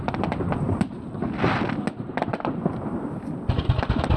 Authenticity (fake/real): real